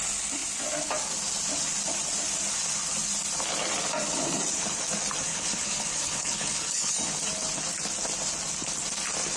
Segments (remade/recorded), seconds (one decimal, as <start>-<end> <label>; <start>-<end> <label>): 0.0-5.3 recorded; 5.3-6.9 remade; 6.9-9.4 recorded